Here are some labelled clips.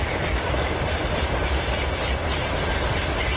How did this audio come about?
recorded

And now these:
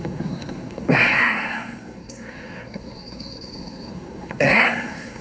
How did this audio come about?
remade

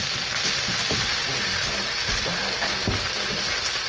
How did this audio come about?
recorded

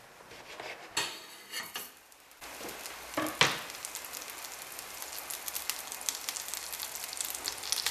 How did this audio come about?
recorded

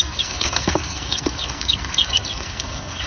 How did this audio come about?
remade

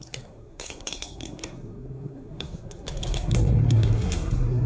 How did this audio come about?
remade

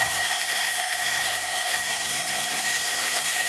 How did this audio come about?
remade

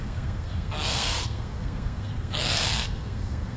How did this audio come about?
remade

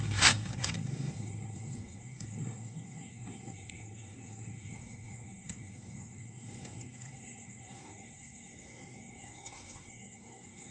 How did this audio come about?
remade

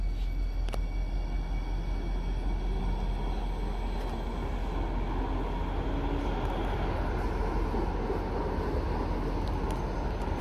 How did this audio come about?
recorded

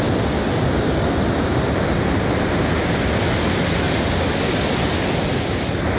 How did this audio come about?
recorded